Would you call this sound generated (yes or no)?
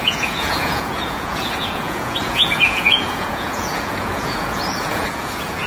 yes